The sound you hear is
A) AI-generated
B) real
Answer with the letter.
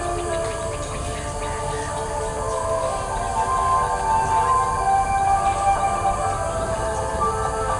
B